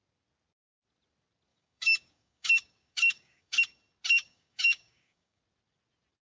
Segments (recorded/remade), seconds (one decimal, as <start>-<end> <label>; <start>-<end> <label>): 0.0-1.5 recorded; 1.5-3.6 remade; 3.6-4.1 recorded; 4.1-5.4 remade; 5.4-6.3 recorded